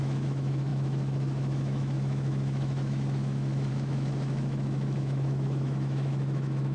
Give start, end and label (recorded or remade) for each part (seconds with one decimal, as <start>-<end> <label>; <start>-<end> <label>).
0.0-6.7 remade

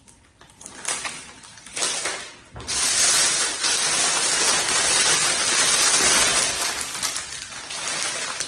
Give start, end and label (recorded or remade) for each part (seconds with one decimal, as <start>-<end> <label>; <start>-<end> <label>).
0.0-8.5 recorded

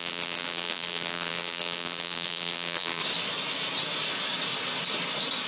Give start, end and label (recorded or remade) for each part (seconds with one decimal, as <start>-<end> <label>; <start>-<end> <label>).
0.0-3.0 remade; 3.0-5.5 recorded

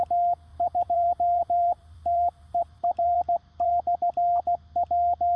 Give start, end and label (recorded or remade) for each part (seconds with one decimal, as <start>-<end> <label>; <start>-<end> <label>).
0.0-0.5 recorded; 0.5-3.7 remade; 3.7-5.4 recorded

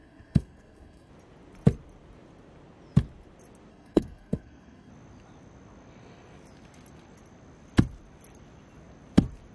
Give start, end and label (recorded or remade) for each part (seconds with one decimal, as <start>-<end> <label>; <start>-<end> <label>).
0.0-1.1 remade; 1.1-3.7 recorded; 3.7-4.9 remade; 4.9-9.5 recorded